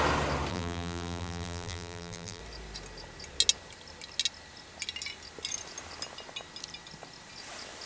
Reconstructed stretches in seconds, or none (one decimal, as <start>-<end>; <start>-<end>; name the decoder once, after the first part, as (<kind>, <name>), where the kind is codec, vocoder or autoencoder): 0.5-2.4 (vocoder, BigVGAN v2)